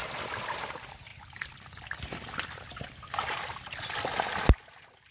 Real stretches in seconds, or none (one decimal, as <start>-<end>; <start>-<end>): 0.0-5.1